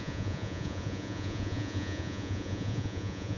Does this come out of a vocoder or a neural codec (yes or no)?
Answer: yes